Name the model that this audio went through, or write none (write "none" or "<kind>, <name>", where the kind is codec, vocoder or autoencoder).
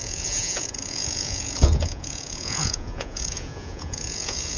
vocoder, Vocos